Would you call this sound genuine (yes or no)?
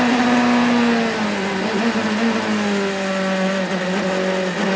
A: yes